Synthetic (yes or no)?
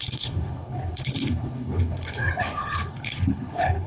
yes